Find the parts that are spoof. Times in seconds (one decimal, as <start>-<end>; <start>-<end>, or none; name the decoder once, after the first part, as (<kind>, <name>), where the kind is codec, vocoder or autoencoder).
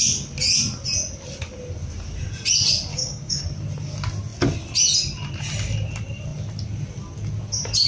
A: 2.9-3.4 (codec, DAC)